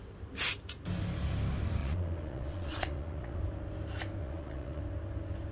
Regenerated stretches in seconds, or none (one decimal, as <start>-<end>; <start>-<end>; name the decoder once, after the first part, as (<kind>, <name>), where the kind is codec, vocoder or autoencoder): 1.8-3.4 (vocoder, Vocos); 4.2-4.8